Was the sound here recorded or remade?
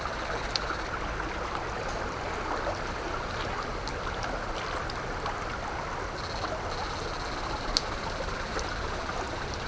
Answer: recorded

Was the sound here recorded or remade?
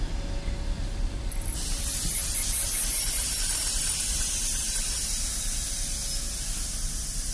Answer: recorded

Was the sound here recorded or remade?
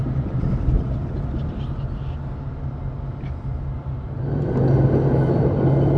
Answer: recorded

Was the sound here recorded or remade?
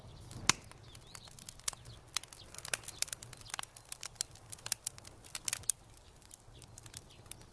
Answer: recorded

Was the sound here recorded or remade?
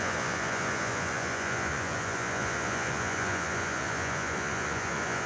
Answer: remade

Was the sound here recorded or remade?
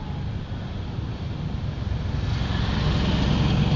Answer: recorded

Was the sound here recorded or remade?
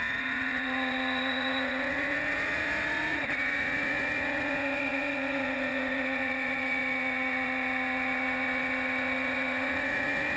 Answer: remade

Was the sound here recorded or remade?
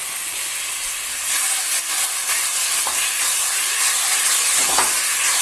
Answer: recorded